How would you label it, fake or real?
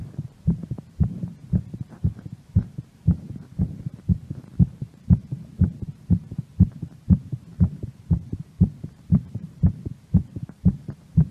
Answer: fake